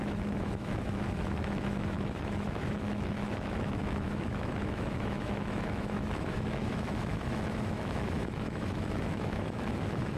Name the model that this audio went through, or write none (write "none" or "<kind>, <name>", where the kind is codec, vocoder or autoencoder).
autoencoder, DAC-VAE